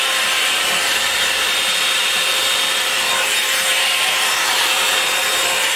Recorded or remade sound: remade